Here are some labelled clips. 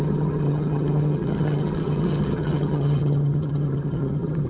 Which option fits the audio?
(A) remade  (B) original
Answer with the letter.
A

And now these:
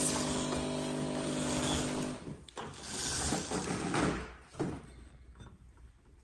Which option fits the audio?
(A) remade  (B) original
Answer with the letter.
B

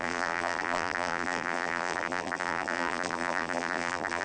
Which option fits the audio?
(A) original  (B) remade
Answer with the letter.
B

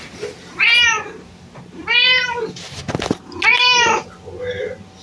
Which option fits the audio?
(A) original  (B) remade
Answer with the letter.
A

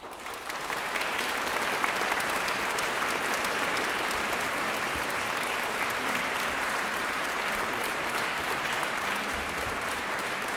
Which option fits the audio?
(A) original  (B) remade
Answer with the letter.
B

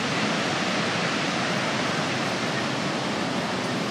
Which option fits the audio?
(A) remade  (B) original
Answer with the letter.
A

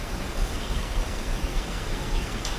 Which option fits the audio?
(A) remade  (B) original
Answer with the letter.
A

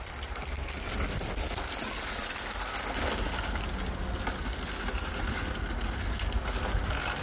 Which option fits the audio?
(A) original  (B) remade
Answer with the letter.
A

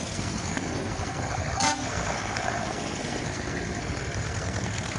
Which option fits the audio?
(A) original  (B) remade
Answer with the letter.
B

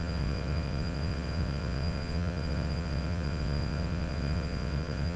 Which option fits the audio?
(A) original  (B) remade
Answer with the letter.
B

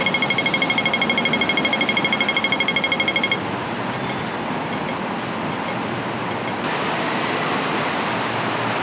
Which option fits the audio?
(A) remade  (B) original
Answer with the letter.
B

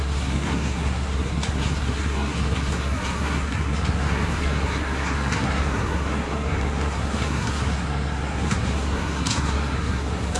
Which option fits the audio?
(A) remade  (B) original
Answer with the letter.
A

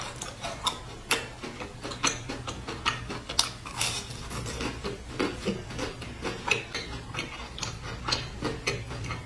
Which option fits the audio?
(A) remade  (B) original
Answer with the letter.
B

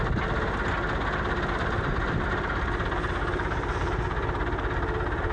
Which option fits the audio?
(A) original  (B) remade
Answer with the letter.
A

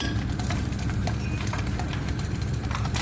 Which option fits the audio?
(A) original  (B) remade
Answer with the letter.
B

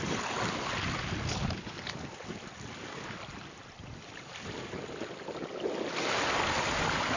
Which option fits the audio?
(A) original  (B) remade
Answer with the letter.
A